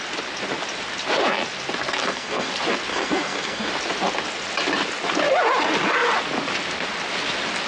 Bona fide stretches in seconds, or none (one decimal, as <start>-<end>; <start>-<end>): 0.0-2.0; 2.5-2.9; 3.7-7.7